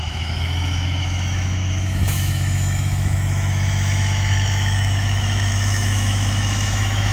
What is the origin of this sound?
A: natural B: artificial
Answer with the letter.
B